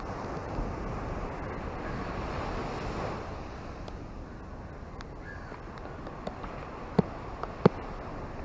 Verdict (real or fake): real